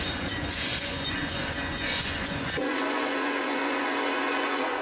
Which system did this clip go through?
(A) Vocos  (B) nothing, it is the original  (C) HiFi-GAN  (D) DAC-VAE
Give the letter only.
A